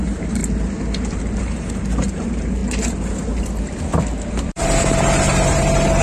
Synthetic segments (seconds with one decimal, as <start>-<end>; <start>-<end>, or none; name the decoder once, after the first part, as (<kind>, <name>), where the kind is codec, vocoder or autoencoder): 0.0-0.4 (vocoder, BigVGAN v2); 1.4-2.6; 4.3-6.0